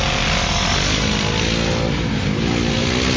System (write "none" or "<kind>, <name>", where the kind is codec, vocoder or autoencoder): none